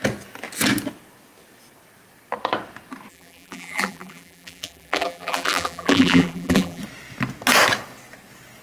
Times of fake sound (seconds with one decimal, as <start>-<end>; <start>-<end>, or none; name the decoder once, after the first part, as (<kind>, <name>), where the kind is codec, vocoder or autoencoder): 3.1-6.8 (vocoder, BigVGAN v2)